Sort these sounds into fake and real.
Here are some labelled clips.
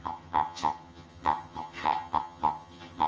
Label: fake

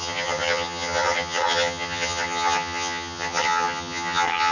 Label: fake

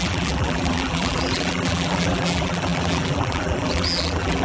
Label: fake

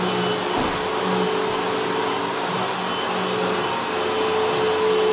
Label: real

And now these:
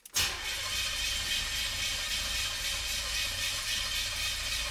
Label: real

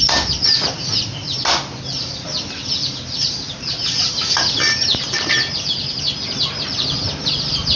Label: real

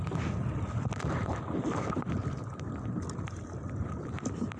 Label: real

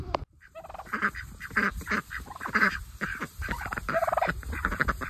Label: fake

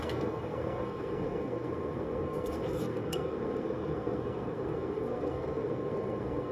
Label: fake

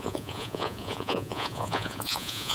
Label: fake